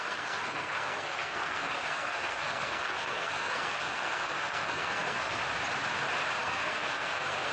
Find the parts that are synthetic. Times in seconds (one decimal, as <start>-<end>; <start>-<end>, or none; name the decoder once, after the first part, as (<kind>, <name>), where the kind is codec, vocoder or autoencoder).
0.0-5.4 (codec, SNAC); 6.4-7.5